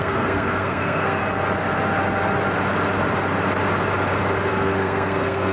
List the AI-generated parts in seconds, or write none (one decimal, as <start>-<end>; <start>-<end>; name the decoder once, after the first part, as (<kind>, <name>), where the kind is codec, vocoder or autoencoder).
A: 0.0-1.2 (codec, SNAC); 4.5-5.5

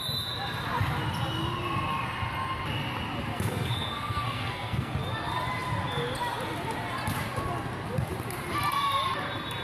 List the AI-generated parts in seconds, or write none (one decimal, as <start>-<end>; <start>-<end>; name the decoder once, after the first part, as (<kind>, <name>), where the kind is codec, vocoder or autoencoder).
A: 3.3-4.9 (codec, SNAC)

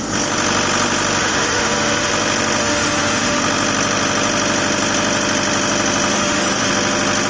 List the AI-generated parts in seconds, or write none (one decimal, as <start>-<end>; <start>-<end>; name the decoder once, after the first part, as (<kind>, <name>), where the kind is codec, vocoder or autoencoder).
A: 1.2-2.1 (autoencoder, DAC-VAE); 2.6-3.4; 6.1-6.7

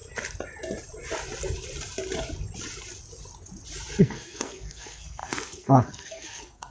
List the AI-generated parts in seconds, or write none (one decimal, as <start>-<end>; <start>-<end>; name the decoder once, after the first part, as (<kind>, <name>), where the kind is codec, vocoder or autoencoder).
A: 4.0-6.7 (codec, SNAC)

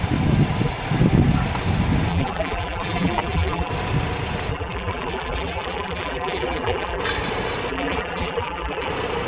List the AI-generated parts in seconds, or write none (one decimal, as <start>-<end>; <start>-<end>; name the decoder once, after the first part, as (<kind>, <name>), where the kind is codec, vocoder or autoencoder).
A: 2.1-3.7 (vocoder, BigVGAN v2); 4.5-7.0; 7.7-8.9